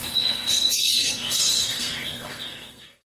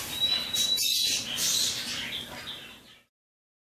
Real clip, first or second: second